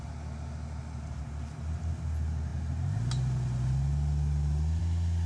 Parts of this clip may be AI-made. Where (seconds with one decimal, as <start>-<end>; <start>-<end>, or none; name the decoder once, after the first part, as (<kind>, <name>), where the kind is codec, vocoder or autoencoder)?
none